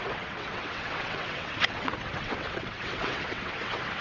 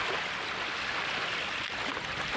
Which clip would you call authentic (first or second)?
second